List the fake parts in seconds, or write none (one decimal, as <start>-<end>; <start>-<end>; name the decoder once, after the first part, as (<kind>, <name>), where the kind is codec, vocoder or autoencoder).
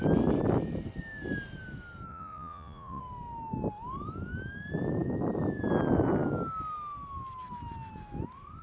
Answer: 2.1-3.0 (vocoder, Vocos)